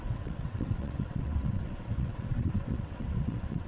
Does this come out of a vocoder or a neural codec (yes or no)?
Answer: yes